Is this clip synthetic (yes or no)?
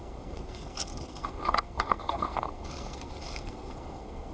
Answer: yes